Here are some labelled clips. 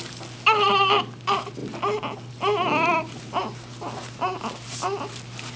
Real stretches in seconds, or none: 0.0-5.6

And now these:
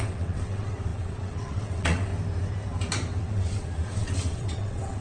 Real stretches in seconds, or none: 2.1-3.2

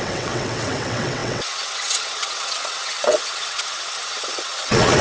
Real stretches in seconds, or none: none

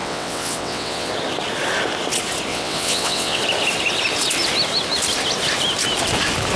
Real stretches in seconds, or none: 1.1-2.5; 3.4-6.6

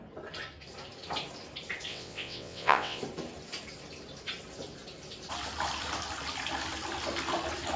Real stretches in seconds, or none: 0.0-1.9; 3.0-7.8

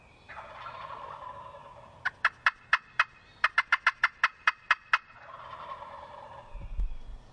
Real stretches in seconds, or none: 0.0-7.3

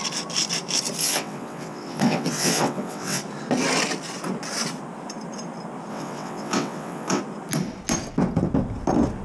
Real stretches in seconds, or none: 0.0-1.0; 3.2-5.9; 7.2-9.2

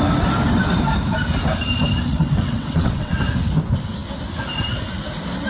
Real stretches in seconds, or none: 0.0-2.1; 3.2-5.5